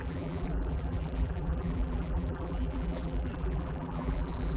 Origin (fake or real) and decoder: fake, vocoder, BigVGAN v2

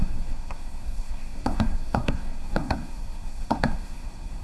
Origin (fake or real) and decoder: fake, codec, SNAC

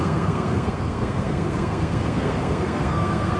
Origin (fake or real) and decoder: fake, codec, SNAC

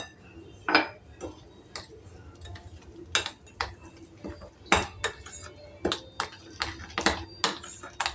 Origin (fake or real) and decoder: real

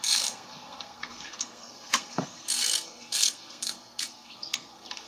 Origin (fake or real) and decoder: fake, codec, SNAC